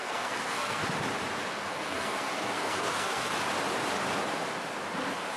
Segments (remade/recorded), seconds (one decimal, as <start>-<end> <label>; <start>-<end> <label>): 0.0-0.8 remade; 0.8-1.5 recorded; 1.5-3.3 remade; 3.3-5.4 recorded